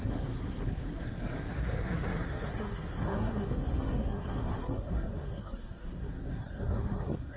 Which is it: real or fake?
fake